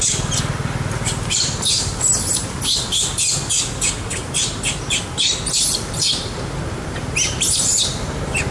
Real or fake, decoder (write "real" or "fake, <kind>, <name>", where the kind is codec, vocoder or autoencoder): real